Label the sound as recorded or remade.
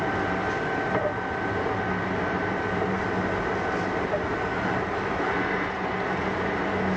recorded